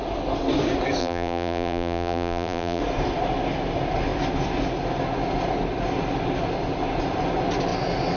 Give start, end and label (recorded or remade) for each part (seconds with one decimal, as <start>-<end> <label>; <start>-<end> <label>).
0.0-1.0 recorded; 1.0-2.8 remade; 2.8-8.2 recorded